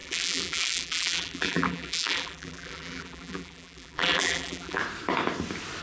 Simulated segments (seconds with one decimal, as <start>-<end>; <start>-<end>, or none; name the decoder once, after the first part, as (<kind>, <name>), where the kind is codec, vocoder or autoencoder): 0.0-4.8 (vocoder, BigVGAN v2)